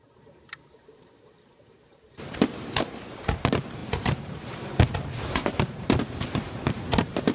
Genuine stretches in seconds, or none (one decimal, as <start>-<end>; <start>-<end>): none

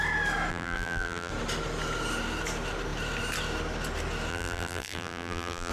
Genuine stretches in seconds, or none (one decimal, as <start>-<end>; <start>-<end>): 0.0-0.5; 1.3-4.3

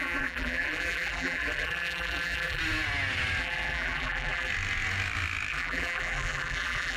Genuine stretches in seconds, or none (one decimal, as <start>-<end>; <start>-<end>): 2.6-3.4; 4.5-5.5

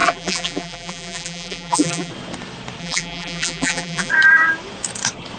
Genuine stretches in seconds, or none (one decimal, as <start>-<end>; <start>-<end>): 2.1-2.8; 4.1-5.4

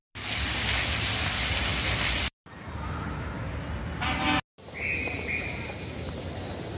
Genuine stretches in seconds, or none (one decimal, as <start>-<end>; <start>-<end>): 0.0-5.0; 5.7-6.8

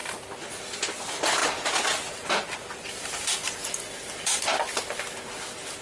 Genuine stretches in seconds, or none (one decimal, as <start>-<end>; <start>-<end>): 0.0-1.4; 2.9-3.6; 4.5-5.8